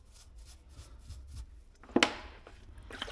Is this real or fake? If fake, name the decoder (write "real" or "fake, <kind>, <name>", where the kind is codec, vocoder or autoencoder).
real